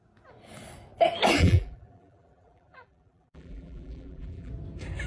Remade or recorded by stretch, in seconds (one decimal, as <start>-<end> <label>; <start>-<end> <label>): 0.0-1.4 recorded; 1.4-4.5 remade; 4.5-5.1 recorded

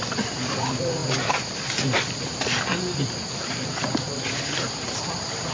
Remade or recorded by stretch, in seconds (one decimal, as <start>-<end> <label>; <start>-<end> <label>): 0.0-1.0 remade; 1.0-4.3 recorded; 4.3-5.5 remade

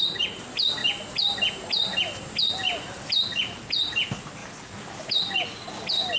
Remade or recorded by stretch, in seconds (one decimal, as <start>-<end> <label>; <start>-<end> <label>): 0.0-6.2 recorded

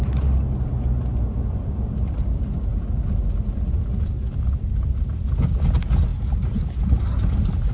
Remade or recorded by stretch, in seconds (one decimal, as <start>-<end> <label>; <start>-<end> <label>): 0.0-7.7 recorded

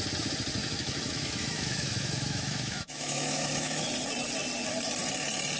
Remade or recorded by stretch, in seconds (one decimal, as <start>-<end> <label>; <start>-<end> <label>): 0.0-0.6 recorded; 0.6-3.8 remade; 3.8-5.6 recorded